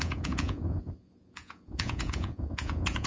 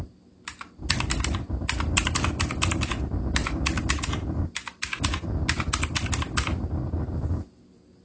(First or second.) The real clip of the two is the second